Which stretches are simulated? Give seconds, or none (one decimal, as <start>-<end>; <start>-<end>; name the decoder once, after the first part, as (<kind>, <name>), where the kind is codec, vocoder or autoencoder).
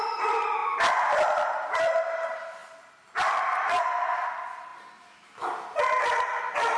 0.0-0.6 (vocoder, BigVGAN v2); 1.4-4.7; 6.0-6.8